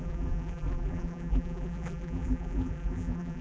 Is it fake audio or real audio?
fake